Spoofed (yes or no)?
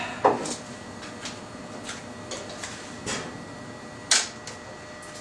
no